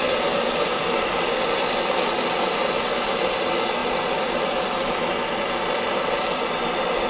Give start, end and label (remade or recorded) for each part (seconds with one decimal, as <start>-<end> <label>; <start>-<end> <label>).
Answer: 0.0-7.1 recorded